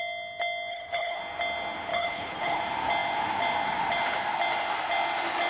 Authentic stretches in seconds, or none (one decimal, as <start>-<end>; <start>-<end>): 0.0-0.7; 1.2-1.9; 2.6-5.5